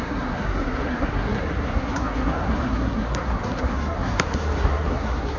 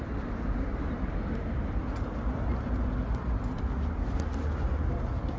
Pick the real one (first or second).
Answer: second